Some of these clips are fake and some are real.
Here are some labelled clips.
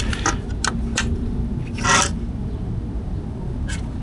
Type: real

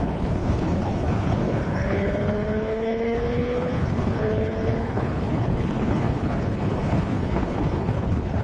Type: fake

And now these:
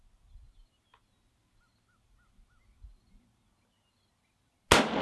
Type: real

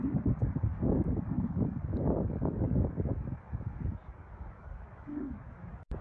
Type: fake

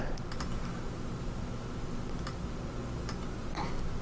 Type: real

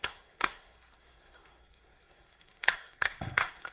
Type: fake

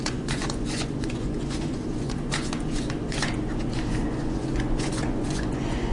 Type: fake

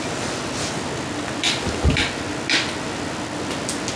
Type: real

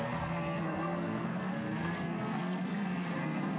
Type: fake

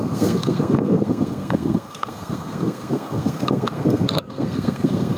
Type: fake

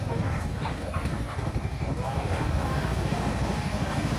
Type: fake